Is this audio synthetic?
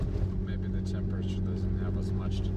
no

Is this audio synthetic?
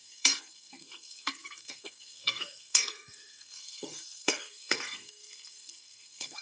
yes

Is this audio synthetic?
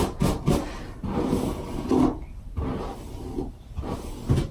no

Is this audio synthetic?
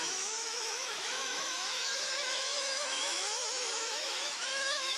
yes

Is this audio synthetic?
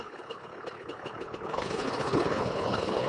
yes